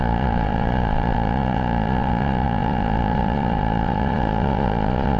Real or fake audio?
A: fake